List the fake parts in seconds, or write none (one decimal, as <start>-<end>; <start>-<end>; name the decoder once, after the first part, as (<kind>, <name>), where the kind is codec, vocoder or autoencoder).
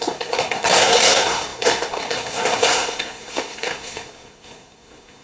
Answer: 0.0-5.2 (codec, SNAC)